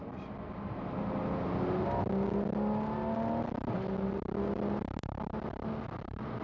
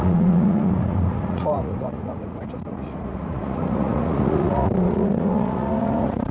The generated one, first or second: second